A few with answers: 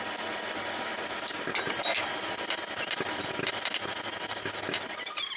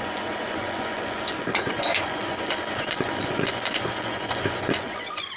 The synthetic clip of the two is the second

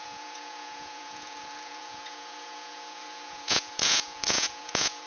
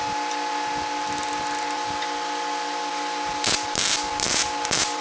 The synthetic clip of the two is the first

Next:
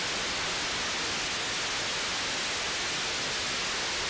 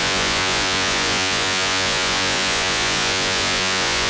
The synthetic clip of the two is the second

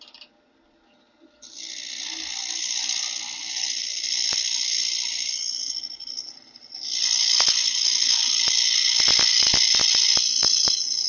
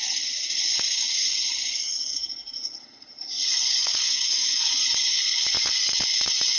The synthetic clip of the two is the second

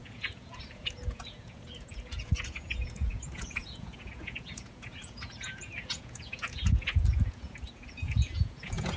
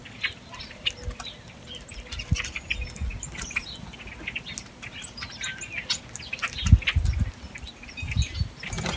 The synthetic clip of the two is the first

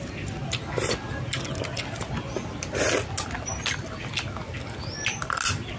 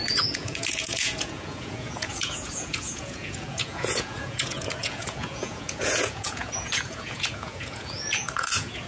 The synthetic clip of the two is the second